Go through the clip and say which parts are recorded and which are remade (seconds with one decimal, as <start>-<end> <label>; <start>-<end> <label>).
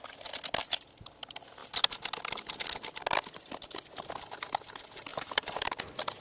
0.0-0.6 recorded; 0.6-1.1 remade; 1.1-5.1 recorded; 5.1-5.8 remade; 5.8-6.2 recorded